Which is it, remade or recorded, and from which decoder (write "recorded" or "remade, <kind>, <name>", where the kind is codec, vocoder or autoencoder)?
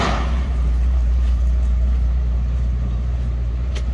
remade, vocoder, BigVGAN v2